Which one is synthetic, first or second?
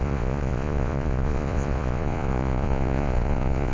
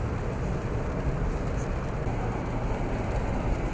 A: first